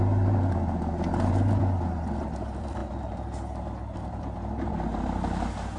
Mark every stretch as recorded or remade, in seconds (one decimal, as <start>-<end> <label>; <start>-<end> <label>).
0.0-5.8 recorded